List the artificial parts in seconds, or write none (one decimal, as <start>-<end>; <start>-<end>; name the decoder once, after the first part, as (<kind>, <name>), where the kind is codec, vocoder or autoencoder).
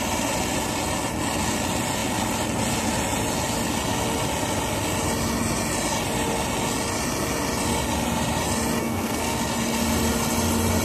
8.8-9.4 (codec, SNAC)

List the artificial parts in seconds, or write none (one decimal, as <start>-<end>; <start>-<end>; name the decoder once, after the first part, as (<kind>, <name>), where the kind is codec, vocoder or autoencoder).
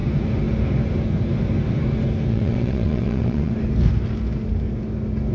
2.3-3.5 (vocoder, WaveNeXt)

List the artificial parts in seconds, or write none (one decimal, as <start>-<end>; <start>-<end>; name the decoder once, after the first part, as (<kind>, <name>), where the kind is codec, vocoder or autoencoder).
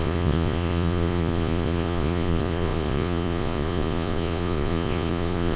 0.0-5.6 (vocoder, Vocos)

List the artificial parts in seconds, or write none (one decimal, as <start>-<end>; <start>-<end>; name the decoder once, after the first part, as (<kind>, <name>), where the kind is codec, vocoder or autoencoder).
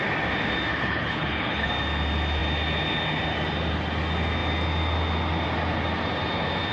0.7-1.7 (codec, HILCodec)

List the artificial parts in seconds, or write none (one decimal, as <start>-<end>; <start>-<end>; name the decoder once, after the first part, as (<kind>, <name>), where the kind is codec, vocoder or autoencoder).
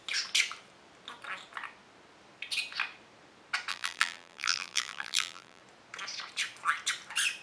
3.7-5.6 (vocoder, BigVGAN v2)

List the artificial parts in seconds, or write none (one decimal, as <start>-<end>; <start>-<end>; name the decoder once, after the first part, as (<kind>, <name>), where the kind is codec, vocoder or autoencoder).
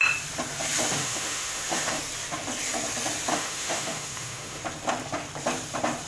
1.0-2.0 (autoencoder, DAC-VAE); 3.3-4.6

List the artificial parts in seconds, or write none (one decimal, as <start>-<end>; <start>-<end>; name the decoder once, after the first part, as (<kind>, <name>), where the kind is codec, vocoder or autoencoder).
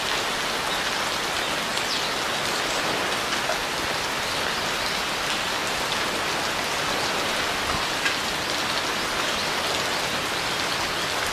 none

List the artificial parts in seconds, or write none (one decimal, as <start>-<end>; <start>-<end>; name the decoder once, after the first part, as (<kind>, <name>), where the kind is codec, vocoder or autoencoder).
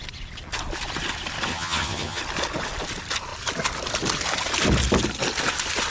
1.5-2.2 (vocoder, HiFi-GAN)